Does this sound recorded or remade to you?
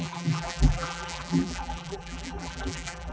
remade